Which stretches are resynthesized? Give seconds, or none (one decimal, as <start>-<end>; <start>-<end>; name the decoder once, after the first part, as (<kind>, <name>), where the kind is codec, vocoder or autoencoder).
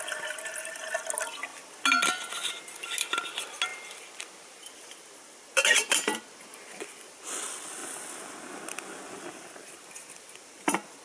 none